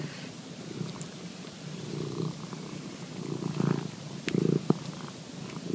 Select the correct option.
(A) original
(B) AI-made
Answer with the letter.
A